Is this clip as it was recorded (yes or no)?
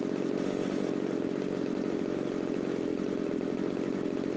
yes